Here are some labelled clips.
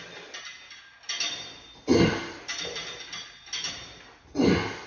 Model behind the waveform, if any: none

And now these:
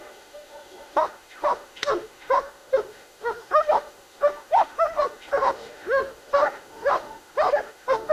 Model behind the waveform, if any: autoencoder, DAC-VAE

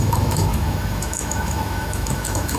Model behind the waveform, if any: autoencoder, DAC-VAE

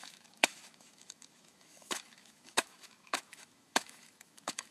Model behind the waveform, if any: autoencoder, DAC-VAE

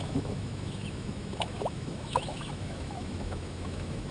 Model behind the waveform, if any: autoencoder, DAC-VAE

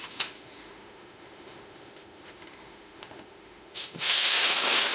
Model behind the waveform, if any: autoencoder, DAC-VAE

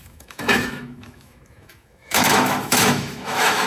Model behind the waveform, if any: autoencoder, DAC-VAE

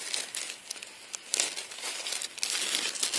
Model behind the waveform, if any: none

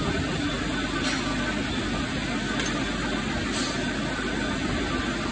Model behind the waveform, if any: none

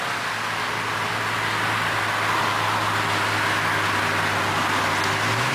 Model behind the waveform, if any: none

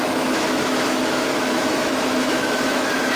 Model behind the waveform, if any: autoencoder, DAC-VAE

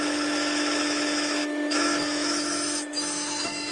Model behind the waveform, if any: autoencoder, DAC-VAE